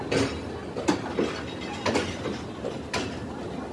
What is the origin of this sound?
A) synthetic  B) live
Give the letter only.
B